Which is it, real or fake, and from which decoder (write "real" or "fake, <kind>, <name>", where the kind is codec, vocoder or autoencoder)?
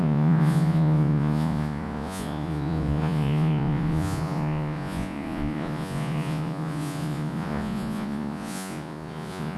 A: fake, vocoder, Vocos